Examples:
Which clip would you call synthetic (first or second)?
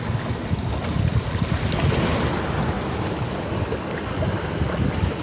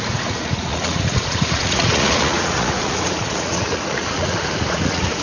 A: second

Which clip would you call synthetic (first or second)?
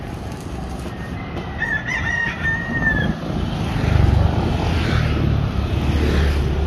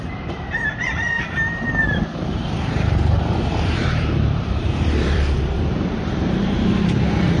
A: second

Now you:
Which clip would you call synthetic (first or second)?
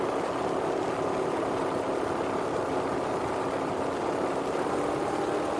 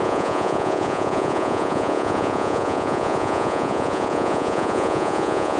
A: second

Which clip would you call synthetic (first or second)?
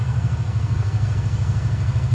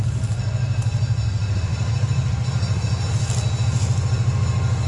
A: first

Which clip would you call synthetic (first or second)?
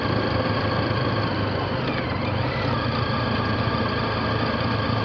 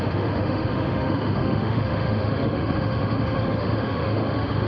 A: second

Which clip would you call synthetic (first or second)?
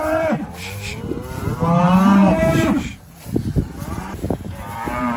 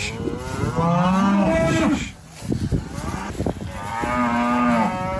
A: first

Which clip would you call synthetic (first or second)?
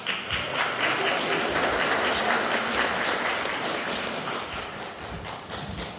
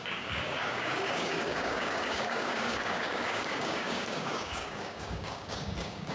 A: second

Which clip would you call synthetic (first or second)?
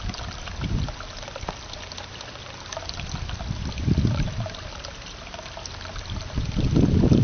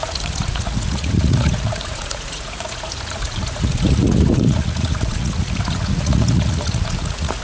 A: second